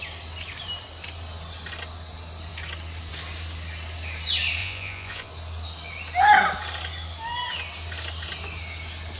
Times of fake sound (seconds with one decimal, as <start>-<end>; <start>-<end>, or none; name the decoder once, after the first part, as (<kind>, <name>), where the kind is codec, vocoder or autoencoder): 4.6-5.3 (vocoder, Vocos)